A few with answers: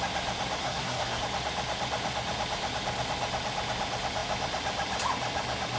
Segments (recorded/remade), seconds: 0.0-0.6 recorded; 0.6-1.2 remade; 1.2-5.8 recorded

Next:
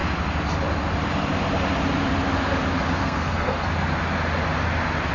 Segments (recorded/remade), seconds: 0.0-3.0 recorded; 3.0-3.7 remade; 3.7-5.1 recorded

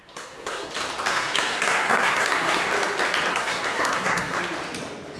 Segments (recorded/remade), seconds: 0.0-0.7 remade; 0.7-1.1 recorded; 1.1-2.7 remade; 2.7-3.3 recorded; 3.3-4.4 remade; 4.4-5.2 recorded

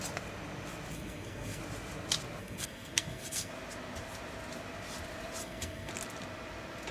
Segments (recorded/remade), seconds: 0.0-0.9 recorded; 0.9-1.6 remade; 1.6-2.4 recorded; 2.4-3.5 remade; 3.5-5.4 recorded; 5.4-5.9 remade; 5.9-6.9 recorded

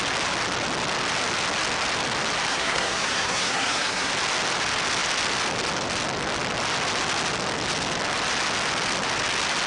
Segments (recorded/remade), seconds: 0.0-2.5 recorded; 2.5-4.1 remade; 4.1-9.7 recorded

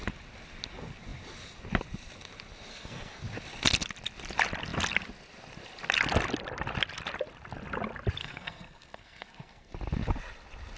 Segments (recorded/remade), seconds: 0.0-2.7 recorded; 2.7-3.2 remade; 3.2-8.2 recorded; 8.2-9.7 remade; 9.7-10.8 recorded